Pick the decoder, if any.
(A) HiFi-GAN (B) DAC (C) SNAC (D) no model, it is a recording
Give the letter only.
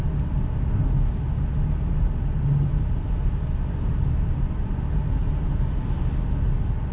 D